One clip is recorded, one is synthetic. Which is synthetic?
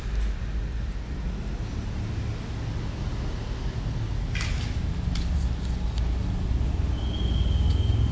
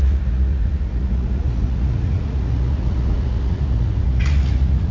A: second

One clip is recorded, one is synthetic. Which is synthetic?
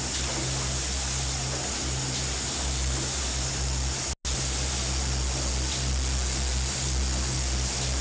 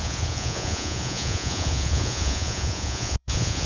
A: second